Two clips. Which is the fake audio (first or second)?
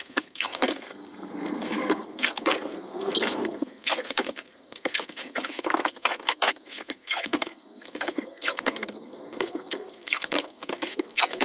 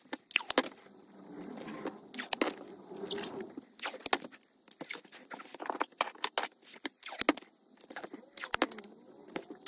first